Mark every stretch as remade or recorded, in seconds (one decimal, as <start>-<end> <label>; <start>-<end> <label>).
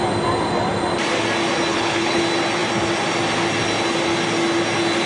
0.0-1.7 recorded; 1.7-2.2 remade; 2.2-5.1 recorded